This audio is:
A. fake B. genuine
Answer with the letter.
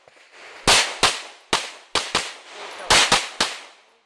B